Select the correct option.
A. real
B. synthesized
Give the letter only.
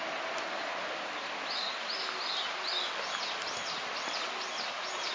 A